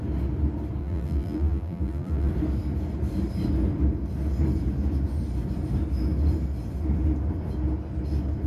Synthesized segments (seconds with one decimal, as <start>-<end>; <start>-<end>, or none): 0.8-2.3